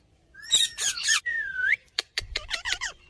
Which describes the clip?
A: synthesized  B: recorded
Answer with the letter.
A